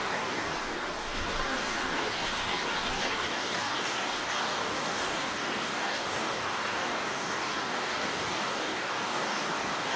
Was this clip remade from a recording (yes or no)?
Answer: yes